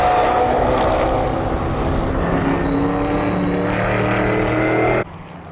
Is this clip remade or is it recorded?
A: recorded